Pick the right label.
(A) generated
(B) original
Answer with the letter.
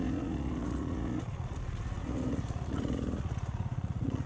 A